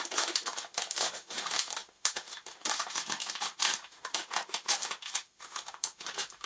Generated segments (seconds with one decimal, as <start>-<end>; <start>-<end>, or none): 0.0-6.5